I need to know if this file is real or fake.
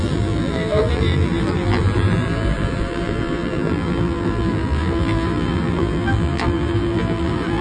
fake